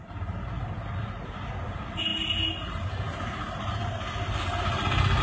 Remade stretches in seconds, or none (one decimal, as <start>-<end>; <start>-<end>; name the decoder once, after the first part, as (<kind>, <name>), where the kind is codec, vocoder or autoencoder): none